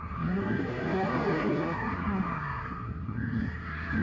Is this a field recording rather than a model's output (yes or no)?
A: no